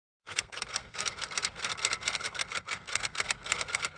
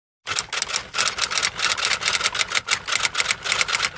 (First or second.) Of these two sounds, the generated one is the first